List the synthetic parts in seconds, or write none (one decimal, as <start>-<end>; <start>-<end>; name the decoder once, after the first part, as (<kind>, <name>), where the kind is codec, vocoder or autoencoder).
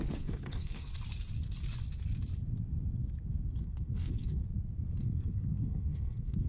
0.0-0.9 (codec, SNAC); 3.6-4.4; 5.0-6.5